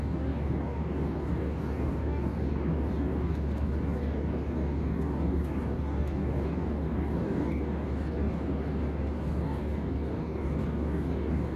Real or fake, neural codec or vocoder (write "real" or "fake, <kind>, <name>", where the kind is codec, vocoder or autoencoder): fake, codec, DAC